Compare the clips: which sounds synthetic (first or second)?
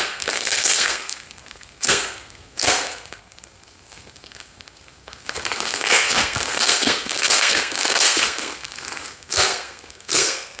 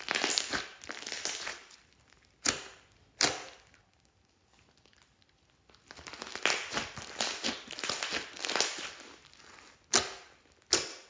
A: first